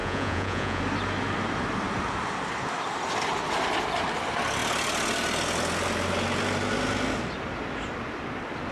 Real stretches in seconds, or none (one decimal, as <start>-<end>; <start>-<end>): 0.8-8.7